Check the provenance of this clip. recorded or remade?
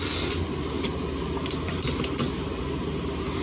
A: recorded